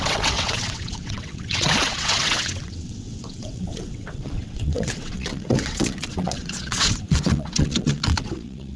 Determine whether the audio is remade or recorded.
remade